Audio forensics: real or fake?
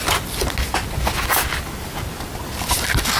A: real